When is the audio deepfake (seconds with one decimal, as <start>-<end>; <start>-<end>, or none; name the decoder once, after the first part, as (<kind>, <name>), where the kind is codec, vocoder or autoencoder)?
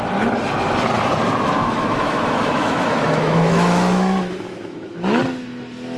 1.6-5.2 (autoencoder, DAC-VAE)